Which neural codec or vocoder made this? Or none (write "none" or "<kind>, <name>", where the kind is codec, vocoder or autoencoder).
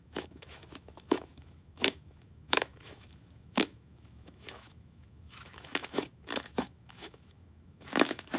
autoencoder, DAC-VAE